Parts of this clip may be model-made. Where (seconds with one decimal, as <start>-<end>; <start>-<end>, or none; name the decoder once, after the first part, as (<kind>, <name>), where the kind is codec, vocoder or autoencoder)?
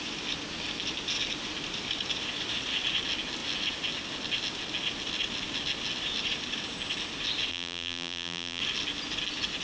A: 7.5-8.6 (vocoder, BigVGAN v2)